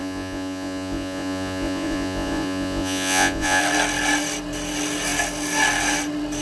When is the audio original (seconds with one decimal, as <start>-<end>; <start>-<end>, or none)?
3.6-6.4

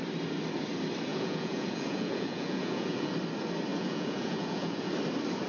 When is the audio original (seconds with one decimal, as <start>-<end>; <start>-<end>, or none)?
0.0-1.1; 3.1-3.7; 4.9-5.5

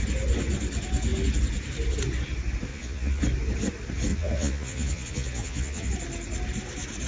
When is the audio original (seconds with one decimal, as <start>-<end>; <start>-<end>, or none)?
0.0-2.7; 3.2-4.1; 5.9-7.1

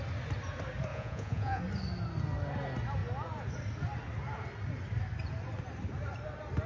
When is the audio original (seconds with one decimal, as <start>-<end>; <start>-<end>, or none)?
0.0-0.9; 1.6-6.7

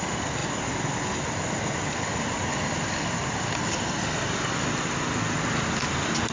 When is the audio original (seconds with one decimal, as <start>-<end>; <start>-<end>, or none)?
0.0-6.3

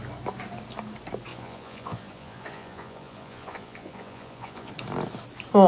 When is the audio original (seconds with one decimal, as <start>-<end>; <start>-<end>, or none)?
0.0-1.3; 4.7-5.7

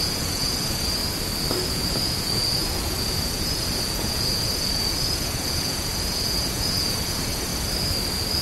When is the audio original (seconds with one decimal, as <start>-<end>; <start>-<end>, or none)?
1.0-1.7; 7.5-8.4

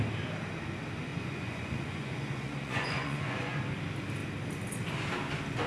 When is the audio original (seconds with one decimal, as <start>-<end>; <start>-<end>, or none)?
0.0-1.1; 3.6-5.7